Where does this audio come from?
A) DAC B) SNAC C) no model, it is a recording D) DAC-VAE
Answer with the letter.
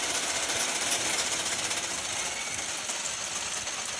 C